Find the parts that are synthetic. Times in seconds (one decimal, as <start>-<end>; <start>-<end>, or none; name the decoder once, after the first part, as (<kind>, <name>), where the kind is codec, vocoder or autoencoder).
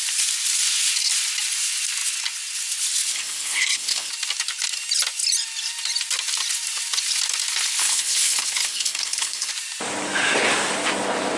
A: 3.1-4.1 (codec, HILCodec); 7.8-9.5